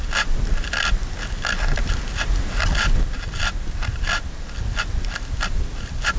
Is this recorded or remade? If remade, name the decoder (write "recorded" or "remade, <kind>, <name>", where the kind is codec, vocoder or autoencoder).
recorded